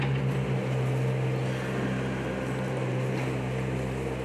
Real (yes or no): yes